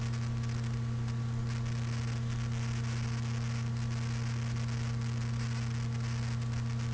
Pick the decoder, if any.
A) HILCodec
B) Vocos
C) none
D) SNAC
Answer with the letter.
C